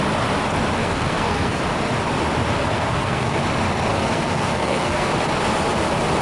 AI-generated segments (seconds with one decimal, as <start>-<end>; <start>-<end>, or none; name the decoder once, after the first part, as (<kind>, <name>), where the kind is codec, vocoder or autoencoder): 0.8-1.6 (codec, SNAC); 2.6-3.4; 3.9-5.1